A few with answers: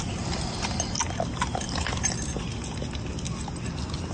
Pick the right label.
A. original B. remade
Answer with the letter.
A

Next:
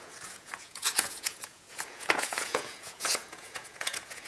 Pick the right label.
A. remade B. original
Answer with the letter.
A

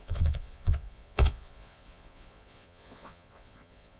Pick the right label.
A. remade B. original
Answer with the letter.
A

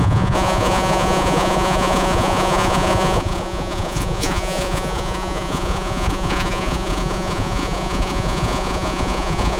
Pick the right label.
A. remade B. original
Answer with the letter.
A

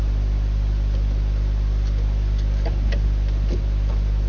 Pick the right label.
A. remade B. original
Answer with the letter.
B